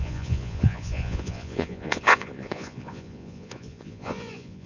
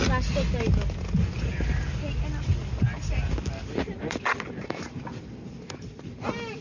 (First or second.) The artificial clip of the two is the first